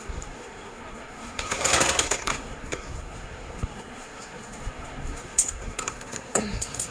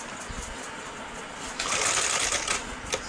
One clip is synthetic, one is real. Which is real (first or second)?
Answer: second